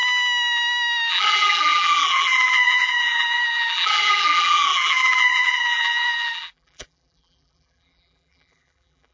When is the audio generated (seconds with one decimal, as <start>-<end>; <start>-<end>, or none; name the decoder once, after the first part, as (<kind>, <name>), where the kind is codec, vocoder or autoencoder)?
1.1-9.1 (vocoder, BigVGAN v2)